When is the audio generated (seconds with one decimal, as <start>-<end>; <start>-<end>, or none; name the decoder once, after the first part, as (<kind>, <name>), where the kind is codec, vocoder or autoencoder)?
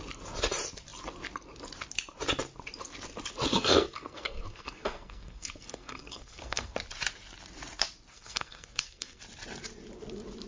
3.5-6.7 (codec, SNAC); 8.1-9.2